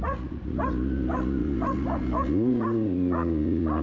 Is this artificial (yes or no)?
yes